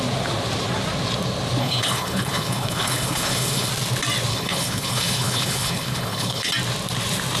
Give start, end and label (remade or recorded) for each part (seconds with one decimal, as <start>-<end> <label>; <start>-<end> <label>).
0.0-1.6 recorded; 1.6-3.7 remade; 3.7-4.3 recorded; 4.3-6.5 remade; 6.5-7.4 recorded